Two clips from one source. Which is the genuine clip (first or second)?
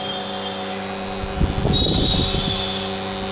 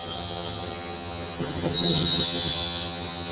first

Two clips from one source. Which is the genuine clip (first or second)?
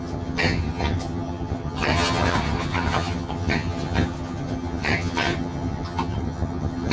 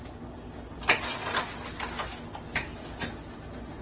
second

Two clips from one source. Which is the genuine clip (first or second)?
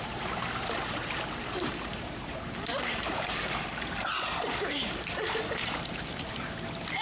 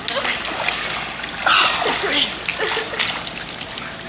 second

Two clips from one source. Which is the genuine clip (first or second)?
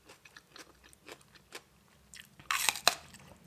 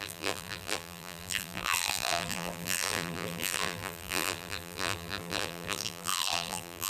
first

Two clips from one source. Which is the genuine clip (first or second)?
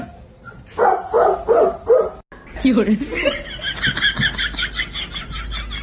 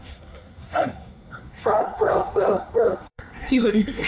first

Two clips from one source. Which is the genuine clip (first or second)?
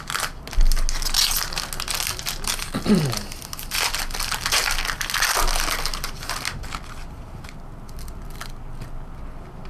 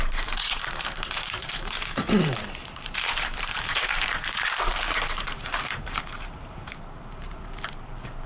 first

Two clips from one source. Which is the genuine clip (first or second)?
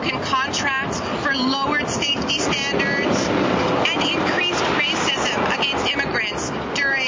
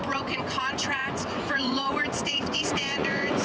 first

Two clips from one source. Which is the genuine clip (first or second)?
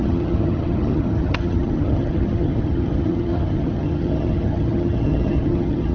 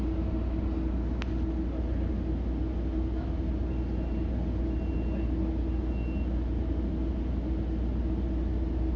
second